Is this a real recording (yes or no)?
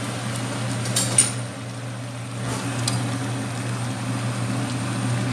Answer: yes